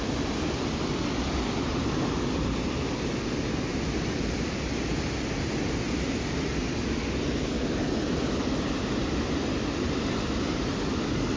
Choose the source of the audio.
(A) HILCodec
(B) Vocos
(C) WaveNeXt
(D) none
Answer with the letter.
D